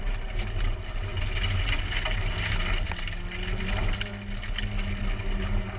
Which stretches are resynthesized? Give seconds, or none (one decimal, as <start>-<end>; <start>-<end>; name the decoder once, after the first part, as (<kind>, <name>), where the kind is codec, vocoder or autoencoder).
none